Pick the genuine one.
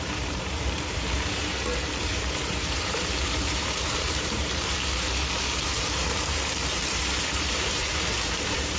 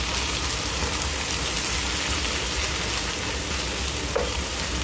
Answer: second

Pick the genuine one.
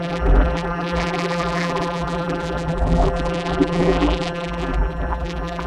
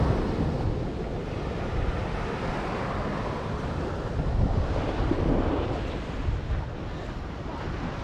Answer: second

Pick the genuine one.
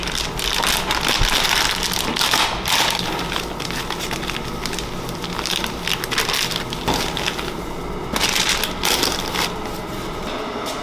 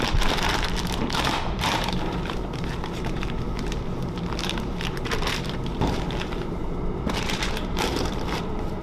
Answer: first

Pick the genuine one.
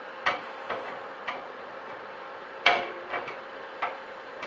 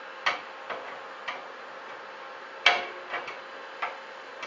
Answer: second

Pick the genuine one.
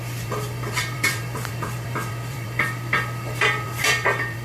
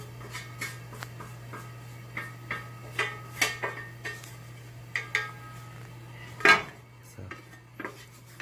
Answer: second